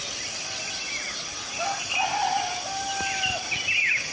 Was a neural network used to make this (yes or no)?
no